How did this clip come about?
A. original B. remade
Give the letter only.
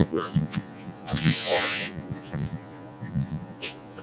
B